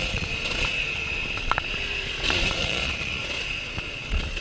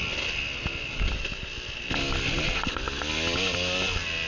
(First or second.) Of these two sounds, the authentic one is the second